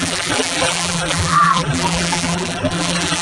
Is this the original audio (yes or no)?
no